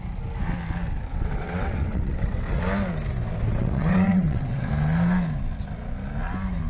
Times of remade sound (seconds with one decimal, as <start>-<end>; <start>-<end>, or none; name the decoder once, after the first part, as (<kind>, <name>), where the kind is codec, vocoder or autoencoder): 1.1-2.6 (vocoder, WaveNeXt); 3.5-4.7